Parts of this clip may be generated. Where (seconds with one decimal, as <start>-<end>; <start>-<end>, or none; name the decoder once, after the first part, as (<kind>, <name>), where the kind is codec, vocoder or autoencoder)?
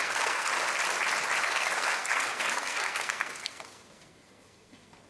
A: 0.0-0.5 (codec, SNAC); 1.4-5.1